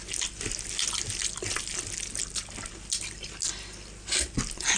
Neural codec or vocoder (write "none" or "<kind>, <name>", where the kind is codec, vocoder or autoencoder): none